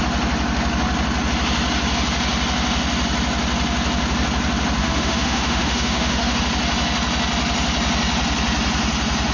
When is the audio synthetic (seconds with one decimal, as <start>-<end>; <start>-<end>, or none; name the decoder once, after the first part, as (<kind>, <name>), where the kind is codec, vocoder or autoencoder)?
4.8-6.4 (autoencoder, DAC-VAE)